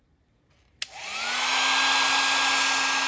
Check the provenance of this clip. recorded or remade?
recorded